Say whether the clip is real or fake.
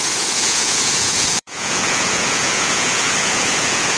fake